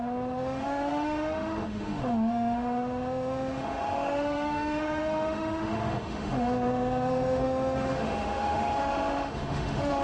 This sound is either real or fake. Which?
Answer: fake